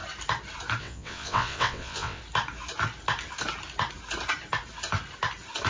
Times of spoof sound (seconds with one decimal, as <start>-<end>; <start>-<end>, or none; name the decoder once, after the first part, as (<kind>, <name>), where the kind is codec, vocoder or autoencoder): 0.8-2.2 (vocoder, WaveNeXt)